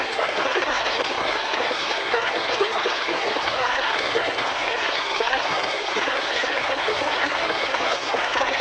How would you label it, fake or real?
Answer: fake